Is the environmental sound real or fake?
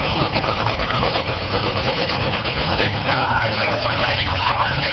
fake